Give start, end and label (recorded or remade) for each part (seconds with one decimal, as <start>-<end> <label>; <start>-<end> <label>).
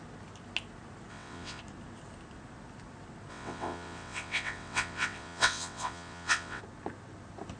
0.0-1.1 recorded; 1.1-1.6 remade; 1.6-3.3 recorded; 3.3-6.6 remade; 6.6-7.6 recorded